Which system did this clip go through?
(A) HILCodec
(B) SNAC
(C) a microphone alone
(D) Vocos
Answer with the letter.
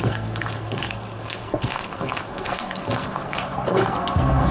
B